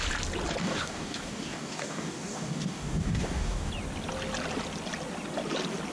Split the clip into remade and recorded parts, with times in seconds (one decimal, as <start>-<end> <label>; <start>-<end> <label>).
0.0-0.6 recorded; 0.6-3.7 remade; 3.7-5.9 recorded